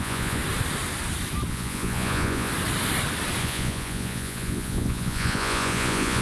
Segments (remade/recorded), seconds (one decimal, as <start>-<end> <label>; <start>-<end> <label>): 0.0-0.4 remade; 0.4-1.5 recorded; 1.5-2.5 remade; 2.5-3.4 recorded; 3.4-6.2 remade